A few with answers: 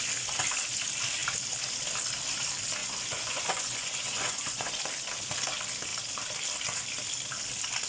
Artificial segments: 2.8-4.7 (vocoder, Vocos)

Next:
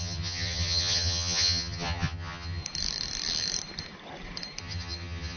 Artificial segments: 0.0-2.6 (vocoder, HiFi-GAN); 4.6-5.4

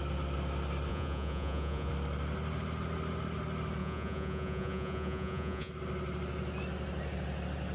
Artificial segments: 0.9-1.9 (vocoder, Vocos); 3.8-5.7

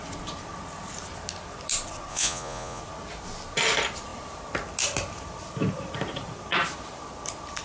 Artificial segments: 2.1-2.8 (vocoder, Vocos)

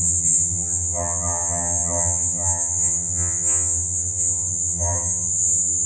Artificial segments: 0.0-5.9 (vocoder, HiFi-GAN)